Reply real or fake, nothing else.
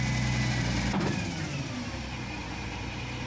real